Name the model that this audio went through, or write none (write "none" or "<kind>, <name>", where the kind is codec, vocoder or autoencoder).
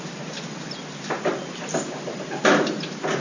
none